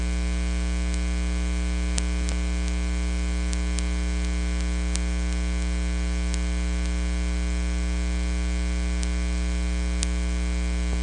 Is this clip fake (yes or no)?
no